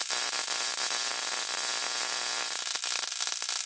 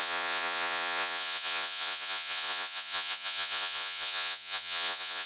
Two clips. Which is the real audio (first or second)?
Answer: first